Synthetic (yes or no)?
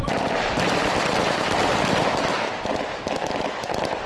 no